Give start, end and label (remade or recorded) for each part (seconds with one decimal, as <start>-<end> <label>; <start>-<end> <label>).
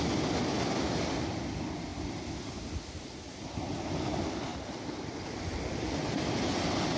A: 0.0-7.0 recorded